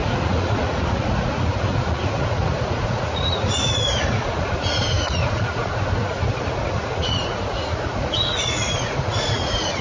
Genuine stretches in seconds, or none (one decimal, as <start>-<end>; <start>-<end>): none